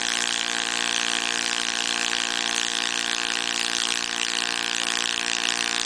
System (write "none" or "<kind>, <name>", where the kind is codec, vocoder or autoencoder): none